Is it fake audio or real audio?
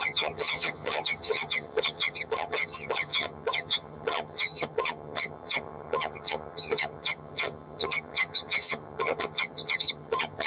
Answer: fake